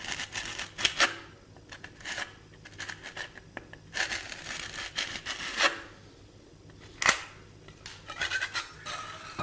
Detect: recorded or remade recorded